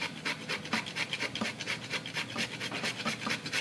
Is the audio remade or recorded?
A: recorded